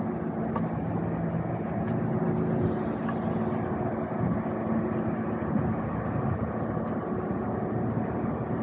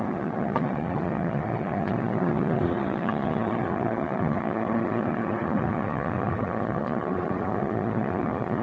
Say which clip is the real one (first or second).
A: first